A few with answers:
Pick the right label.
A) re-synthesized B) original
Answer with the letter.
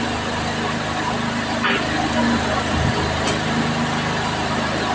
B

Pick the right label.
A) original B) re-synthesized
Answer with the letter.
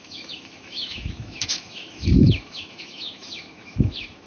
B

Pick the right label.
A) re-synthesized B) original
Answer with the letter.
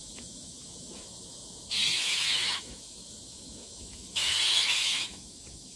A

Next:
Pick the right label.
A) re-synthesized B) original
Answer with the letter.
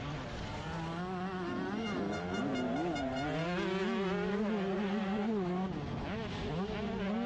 B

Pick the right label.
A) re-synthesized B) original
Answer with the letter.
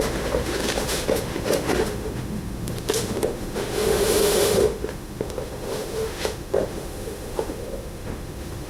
A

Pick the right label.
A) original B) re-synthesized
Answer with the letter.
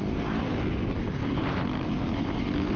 A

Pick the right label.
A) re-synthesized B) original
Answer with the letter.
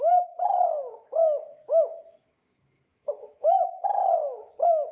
A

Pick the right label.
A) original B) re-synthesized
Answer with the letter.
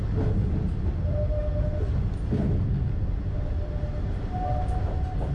A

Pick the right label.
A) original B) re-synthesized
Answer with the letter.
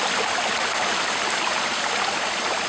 A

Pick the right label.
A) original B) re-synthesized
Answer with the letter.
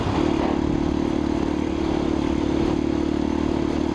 A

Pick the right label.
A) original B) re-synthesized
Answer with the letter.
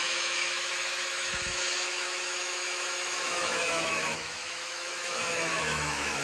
B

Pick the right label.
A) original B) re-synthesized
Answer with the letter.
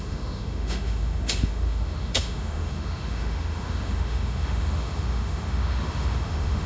B